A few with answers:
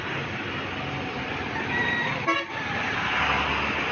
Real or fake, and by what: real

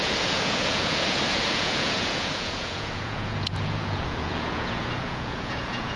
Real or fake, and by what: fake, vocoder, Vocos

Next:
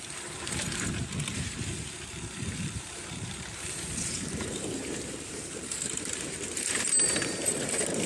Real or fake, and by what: fake, vocoder, BigVGAN v2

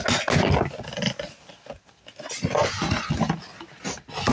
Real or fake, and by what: real